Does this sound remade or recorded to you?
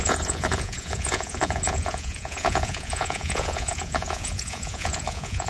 remade